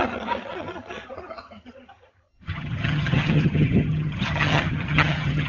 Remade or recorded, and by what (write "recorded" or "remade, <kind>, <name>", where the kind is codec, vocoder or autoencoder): remade, vocoder, HiFi-GAN